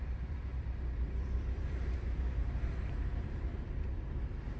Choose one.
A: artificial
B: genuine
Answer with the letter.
A